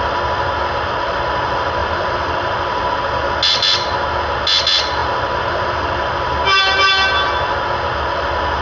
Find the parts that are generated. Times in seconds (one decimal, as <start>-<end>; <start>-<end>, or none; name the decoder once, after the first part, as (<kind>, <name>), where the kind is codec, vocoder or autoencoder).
none